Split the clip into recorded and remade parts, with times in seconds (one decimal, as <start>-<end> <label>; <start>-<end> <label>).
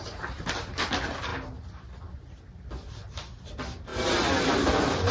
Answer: 0.0-5.1 recorded